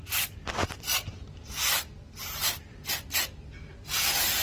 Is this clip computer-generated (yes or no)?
yes